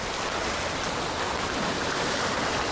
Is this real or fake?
real